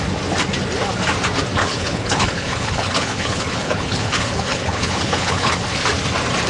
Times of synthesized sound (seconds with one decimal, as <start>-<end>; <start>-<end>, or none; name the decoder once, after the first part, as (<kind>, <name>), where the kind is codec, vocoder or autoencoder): 1.6-5.5 (codec, HILCodec)